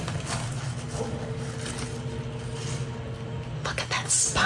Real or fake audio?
real